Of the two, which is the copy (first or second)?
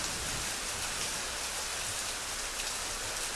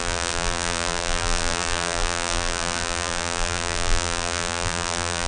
second